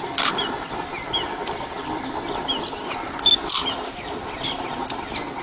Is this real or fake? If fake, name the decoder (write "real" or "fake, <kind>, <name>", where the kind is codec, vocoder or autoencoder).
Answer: real